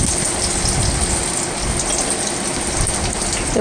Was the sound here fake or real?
real